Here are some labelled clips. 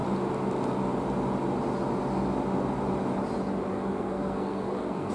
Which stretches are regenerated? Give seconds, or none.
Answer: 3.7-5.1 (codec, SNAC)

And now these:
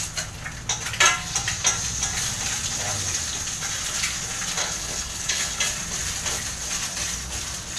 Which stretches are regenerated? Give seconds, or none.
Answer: 4.6-5.6 (codec, HILCodec)

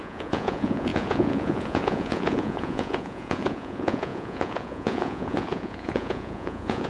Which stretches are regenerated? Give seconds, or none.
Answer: 0.0-6.9 (vocoder, Vocos)

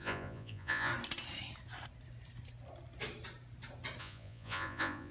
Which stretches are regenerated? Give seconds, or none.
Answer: 0.0-0.9 (vocoder, Vocos); 4.0-5.1

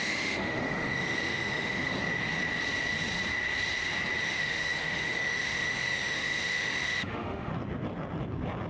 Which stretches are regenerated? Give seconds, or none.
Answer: 0.0-1.9 (autoencoder, DAC-VAE); 4.2-7.5

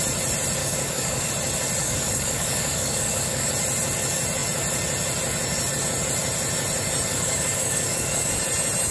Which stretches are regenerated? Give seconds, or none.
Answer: 0.6-1.3 (codec, DAC); 1.8-3.5; 7.1-8.3

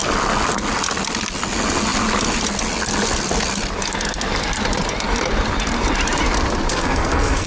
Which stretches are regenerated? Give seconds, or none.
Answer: 6.7-7.5 (codec, SNAC)

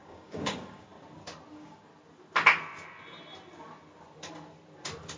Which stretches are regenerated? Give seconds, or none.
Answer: 0.0-0.9 (codec, DAC); 1.5-1.9